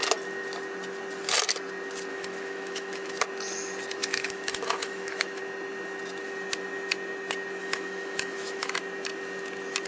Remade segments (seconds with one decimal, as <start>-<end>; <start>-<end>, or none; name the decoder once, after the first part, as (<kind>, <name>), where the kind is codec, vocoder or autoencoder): 2.1-3.2 (autoencoder, DAC-VAE); 4.0-5.4; 7.6-8.8